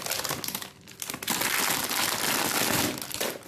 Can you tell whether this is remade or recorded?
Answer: recorded